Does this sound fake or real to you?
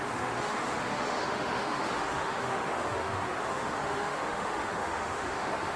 fake